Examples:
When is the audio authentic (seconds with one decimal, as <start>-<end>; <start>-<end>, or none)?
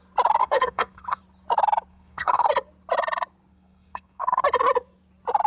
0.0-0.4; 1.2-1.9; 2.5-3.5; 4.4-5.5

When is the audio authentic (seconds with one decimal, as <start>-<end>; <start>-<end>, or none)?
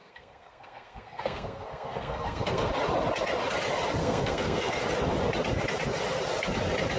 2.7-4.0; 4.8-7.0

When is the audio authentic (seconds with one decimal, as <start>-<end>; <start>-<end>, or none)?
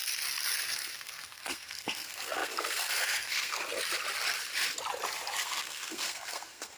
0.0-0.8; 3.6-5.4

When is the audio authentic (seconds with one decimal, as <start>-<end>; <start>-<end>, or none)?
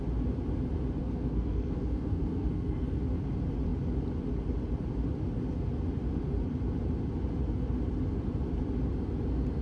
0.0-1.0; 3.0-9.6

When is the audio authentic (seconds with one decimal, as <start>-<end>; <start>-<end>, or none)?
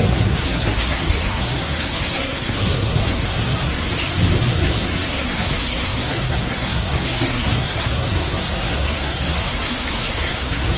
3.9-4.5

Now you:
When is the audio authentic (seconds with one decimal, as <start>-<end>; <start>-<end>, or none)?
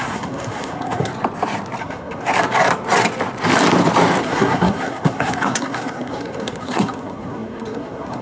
1.1-1.8; 2.3-4.2